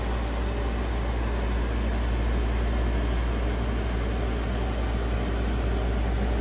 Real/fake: real